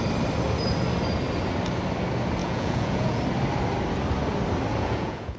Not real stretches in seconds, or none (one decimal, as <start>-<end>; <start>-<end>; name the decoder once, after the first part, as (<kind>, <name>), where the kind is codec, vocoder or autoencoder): 2.4-3.2 (vocoder, Vocos); 4.7-5.4